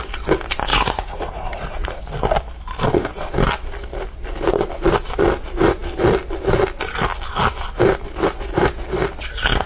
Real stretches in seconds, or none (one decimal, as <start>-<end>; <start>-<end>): 0.0-0.7; 2.0-9.7